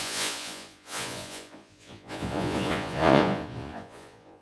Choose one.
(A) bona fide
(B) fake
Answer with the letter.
B